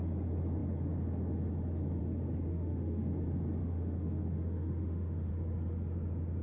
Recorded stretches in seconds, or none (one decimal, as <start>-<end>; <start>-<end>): 0.0-2.5; 3.1-3.6; 5.3-6.4